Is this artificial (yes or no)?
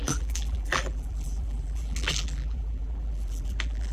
yes